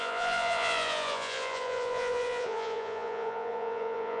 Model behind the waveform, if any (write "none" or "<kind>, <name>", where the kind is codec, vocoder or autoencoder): vocoder, Vocos